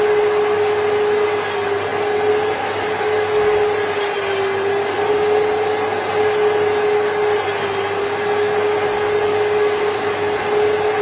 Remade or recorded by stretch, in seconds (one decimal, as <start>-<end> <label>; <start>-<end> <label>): 0.0-11.0 recorded